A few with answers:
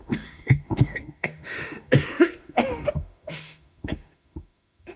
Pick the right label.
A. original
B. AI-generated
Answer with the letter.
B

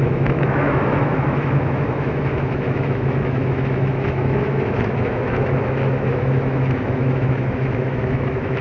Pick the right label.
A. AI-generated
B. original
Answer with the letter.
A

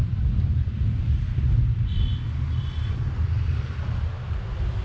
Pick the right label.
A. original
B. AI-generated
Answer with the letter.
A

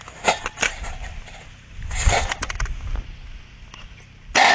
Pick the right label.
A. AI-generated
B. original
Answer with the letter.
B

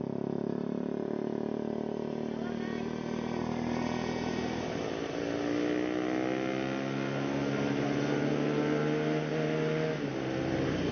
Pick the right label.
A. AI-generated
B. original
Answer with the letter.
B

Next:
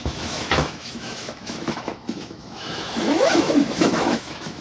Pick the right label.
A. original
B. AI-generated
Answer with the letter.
B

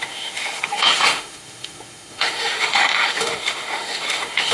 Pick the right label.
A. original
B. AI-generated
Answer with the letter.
B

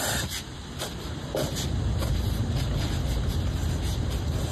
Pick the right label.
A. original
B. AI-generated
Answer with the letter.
A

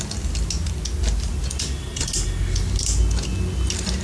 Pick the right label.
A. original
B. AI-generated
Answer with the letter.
A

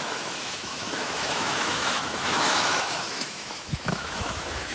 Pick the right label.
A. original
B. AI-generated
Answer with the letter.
B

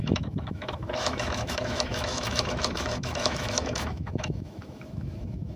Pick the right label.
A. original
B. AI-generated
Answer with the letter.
B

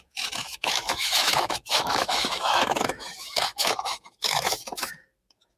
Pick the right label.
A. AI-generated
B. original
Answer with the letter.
A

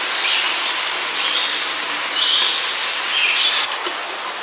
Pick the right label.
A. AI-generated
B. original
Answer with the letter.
B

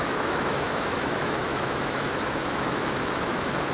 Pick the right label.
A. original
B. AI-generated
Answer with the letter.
B